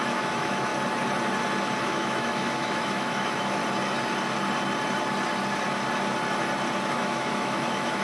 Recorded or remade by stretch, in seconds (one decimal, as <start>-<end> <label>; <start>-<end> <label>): 0.0-0.7 remade; 0.7-1.8 recorded; 1.8-3.6 remade; 3.6-6.9 recorded; 6.9-8.0 remade